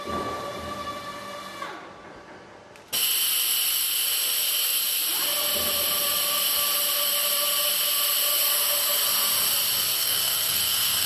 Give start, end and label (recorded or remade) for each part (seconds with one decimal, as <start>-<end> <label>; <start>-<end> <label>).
0.0-9.9 recorded; 9.9-11.1 remade